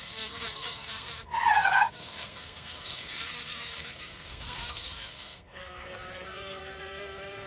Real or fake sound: fake